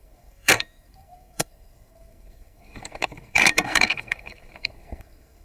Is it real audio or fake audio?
fake